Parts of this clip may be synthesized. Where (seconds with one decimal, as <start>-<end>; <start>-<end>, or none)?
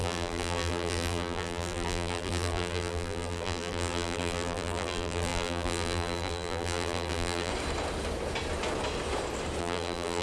0.0-7.5; 9.6-10.2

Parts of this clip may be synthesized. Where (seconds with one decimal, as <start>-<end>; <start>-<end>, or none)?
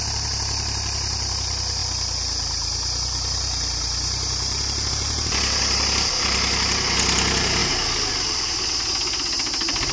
none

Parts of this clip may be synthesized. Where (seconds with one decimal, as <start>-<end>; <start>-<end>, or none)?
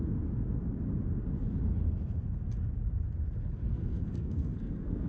3.7-5.1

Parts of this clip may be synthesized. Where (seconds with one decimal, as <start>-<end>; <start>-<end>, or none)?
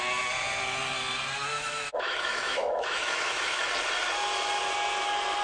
1.5-3.7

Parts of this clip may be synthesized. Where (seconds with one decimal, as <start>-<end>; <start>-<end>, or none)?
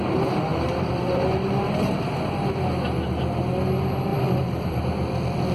0.5-1.9; 4.1-4.8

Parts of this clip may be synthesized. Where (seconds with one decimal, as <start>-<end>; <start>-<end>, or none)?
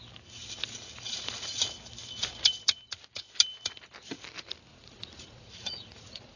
4.7-6.4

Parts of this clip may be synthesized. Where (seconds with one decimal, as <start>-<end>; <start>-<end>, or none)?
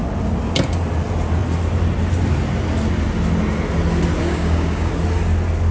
4.2-4.9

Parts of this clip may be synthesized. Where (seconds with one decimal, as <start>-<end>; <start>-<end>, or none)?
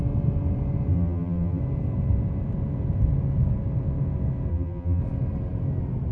0.9-1.6; 4.5-5.0